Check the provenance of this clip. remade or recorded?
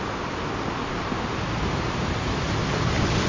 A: recorded